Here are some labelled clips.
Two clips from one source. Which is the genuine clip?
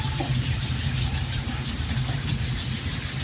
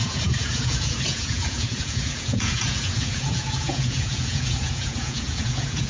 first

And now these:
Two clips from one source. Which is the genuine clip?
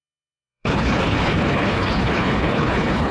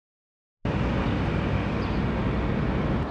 second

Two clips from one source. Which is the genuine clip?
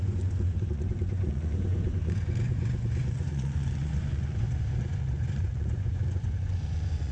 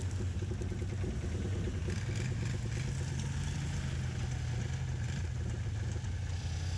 second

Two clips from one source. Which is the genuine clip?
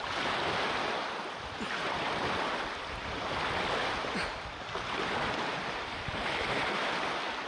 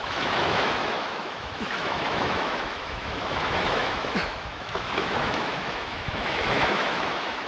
first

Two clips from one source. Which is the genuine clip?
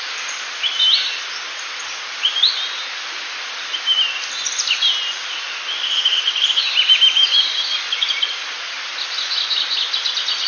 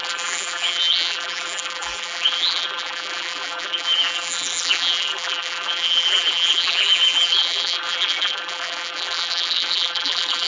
first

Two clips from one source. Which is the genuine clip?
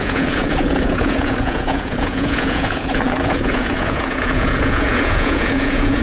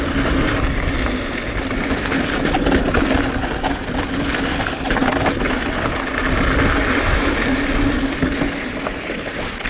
second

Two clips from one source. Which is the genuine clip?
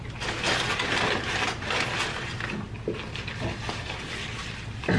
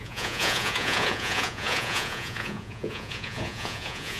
first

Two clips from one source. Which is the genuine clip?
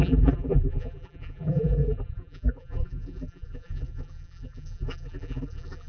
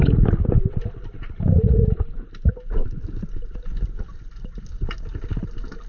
second